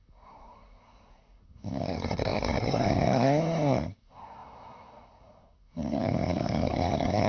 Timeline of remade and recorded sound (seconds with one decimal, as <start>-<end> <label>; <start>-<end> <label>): 0.0-7.3 remade